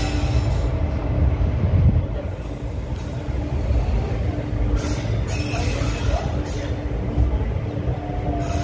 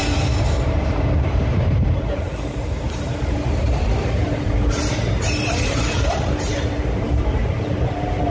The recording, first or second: first